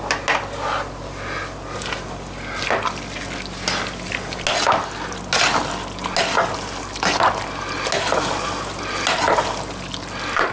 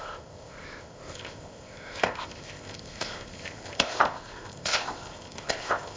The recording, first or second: first